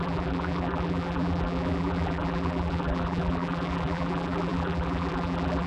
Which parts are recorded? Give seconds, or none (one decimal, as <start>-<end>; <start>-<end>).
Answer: none